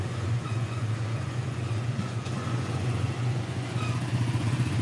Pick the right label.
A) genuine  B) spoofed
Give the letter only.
B